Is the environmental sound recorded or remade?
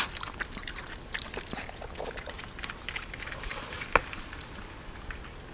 remade